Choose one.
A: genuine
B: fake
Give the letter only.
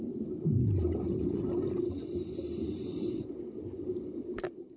A